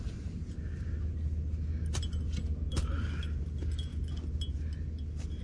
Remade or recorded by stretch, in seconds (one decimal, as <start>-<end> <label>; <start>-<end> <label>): 0.0-5.4 recorded